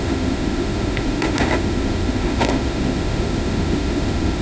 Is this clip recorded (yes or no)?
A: no